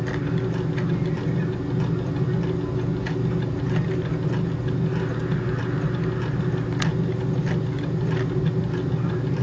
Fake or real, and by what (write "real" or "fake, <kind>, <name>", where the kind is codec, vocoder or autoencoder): real